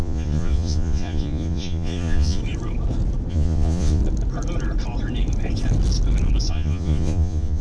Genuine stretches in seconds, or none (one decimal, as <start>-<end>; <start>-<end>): 2.4-3.3; 4.0-6.5